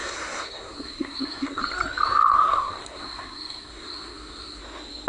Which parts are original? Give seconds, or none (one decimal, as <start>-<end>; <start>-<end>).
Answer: 1.6-2.3; 4.6-5.1